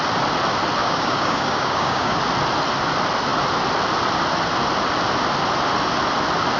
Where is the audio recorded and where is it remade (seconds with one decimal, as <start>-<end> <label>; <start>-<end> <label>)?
0.0-0.8 recorded; 0.8-2.2 remade; 2.2-6.6 recorded